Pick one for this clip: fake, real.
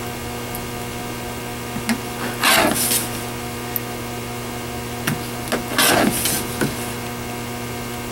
real